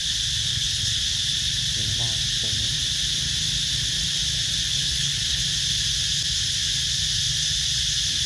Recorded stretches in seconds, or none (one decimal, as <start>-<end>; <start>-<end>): 0.0-0.5; 1.0-4.7; 5.4-8.3